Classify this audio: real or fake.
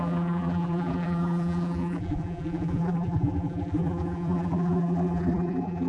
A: fake